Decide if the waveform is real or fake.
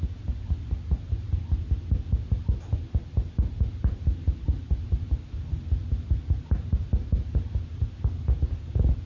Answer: real